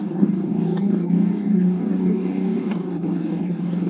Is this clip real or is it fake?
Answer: fake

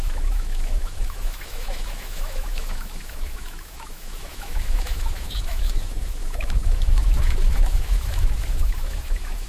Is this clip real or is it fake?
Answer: fake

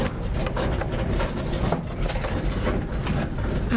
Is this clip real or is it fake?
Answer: real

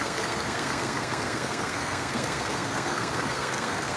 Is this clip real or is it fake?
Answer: fake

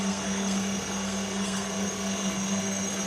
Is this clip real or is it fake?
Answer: fake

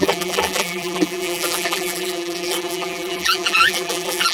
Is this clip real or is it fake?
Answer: fake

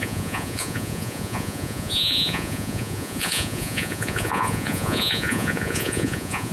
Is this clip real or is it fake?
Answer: fake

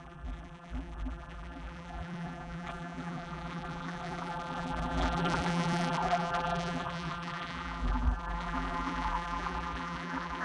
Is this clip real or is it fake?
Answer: fake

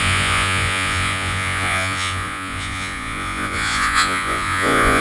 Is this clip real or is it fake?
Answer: fake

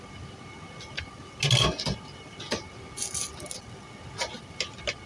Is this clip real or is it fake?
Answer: real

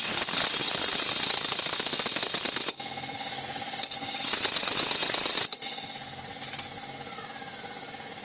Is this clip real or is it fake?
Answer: real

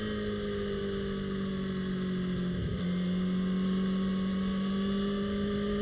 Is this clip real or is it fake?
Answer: real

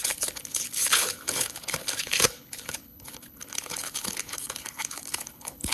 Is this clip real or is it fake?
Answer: fake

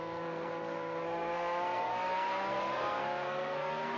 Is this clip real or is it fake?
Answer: fake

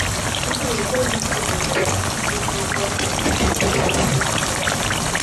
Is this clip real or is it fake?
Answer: real